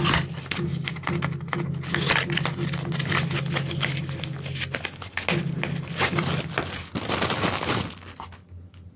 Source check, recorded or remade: recorded